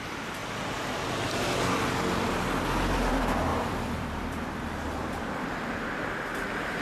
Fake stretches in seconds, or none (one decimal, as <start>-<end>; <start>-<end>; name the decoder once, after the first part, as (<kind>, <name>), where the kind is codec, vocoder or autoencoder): 3.5-5.0 (vocoder, BigVGAN v2)